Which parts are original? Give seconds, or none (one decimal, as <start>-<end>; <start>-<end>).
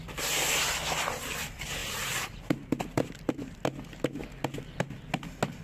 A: 0.0-5.6